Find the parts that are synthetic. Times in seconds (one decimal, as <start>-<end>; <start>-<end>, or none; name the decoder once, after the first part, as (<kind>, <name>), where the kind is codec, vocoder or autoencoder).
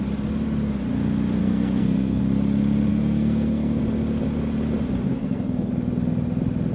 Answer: 1.4-2.2 (codec, SNAC); 2.9-3.8; 5.1-5.7